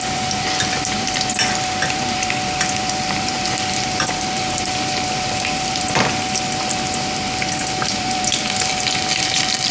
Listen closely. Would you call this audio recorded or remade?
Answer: remade